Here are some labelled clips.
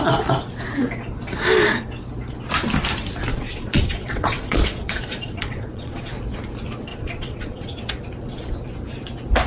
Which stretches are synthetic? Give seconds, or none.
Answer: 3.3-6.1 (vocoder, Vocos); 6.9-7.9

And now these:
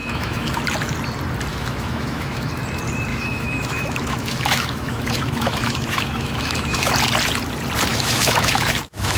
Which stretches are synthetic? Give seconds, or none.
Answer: 0.0-0.6 (autoencoder, DAC-VAE); 1.5-2.5; 3.1-6.9; 7.9-9.2

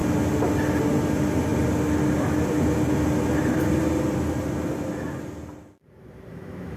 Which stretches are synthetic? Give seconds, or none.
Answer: 6.3-6.8 (autoencoder, DAC-VAE)

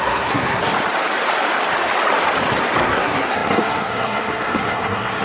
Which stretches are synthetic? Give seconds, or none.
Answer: 0.0-0.7 (codec, SNAC); 2.8-5.2

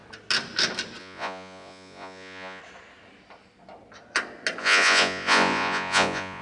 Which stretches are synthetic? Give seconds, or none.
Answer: 1.0-2.6 (vocoder, Vocos); 4.6-6.4